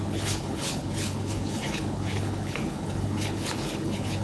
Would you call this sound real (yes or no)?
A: no